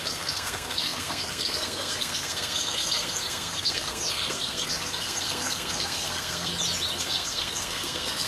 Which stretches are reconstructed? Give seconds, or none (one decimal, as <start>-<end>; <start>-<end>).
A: 0.0-6.5; 7.0-8.3